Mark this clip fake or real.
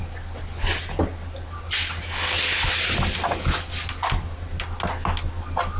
real